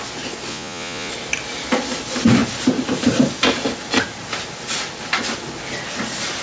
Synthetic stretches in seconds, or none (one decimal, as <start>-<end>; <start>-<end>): 0.5-1.1